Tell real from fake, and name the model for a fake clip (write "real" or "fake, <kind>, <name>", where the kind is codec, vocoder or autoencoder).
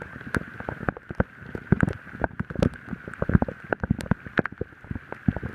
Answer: fake, vocoder, BigVGAN v2